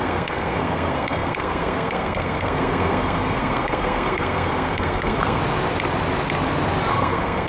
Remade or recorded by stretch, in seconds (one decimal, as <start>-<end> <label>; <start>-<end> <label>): 0.0-5.4 remade; 5.4-6.9 recorded; 6.9-7.5 remade